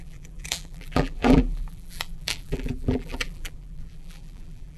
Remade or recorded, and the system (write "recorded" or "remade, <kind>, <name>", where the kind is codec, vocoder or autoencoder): remade, vocoder, BigVGAN v2